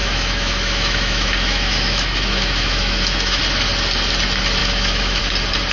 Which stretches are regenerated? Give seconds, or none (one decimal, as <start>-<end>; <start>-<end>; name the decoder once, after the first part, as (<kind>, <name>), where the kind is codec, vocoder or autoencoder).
0.0-3.4 (autoencoder, DAC-VAE); 4.6-5.2